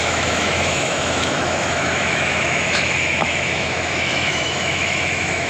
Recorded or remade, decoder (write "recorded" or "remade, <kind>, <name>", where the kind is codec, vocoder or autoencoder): remade, autoencoder, DAC-VAE